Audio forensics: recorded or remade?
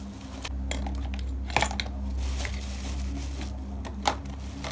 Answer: recorded